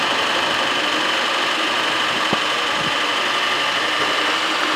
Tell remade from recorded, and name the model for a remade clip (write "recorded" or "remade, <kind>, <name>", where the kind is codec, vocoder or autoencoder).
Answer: recorded